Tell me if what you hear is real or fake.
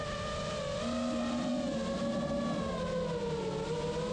real